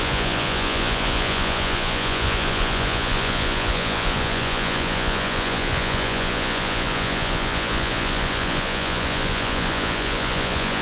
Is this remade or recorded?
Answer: remade